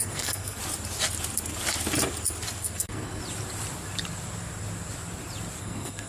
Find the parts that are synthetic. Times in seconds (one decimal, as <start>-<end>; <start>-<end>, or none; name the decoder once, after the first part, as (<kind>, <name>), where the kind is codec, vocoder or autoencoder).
0.0-0.6 (codec, SNAC); 2.6-3.2; 5.6-6.1